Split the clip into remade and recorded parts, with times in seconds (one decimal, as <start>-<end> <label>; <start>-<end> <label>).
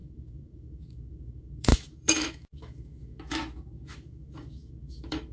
0.0-5.3 remade